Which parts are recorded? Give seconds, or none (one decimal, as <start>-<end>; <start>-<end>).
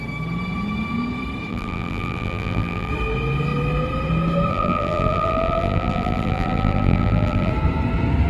0.0-1.5; 2.9-4.5; 7.5-8.3